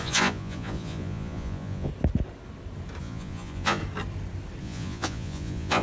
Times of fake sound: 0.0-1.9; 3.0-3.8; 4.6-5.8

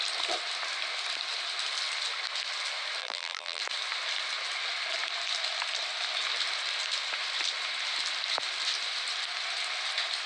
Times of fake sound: 3.0-3.6

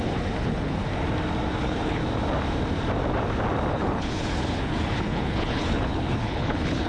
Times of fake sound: 0.0-0.9; 1.6-2.0; 3.7-6.9

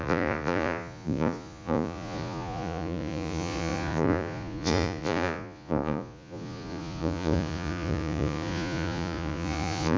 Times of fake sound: 0.0-10.0

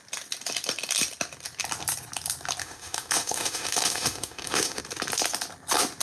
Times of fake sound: 2.6-4.8